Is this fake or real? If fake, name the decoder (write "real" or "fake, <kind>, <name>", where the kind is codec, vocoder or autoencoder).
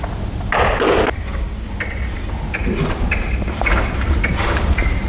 real